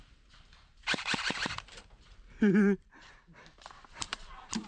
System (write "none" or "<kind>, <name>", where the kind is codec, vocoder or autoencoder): vocoder, BigVGAN v2